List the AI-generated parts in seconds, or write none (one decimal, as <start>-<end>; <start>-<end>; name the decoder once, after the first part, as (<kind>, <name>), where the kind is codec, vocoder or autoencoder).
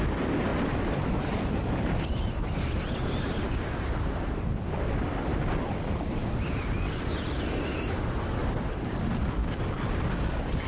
0.5-2.2 (vocoder, BigVGAN v2)